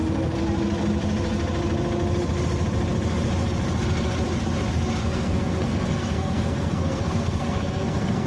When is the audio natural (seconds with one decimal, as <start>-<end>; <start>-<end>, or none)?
0.0-5.0